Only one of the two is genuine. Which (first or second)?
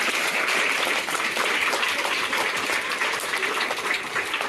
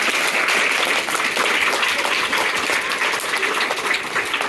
second